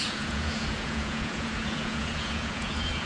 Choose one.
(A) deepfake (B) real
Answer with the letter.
A